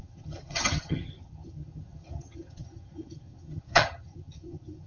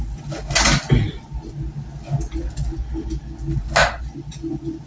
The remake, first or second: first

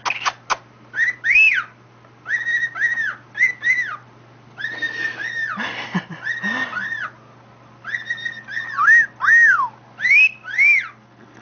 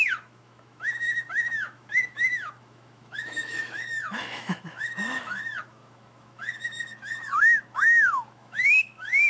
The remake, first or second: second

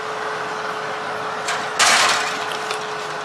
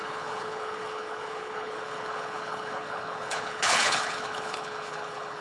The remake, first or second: second